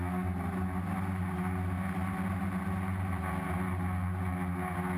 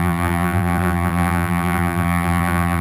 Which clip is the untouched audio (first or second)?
first